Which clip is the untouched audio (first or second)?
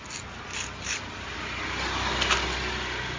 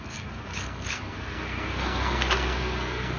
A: first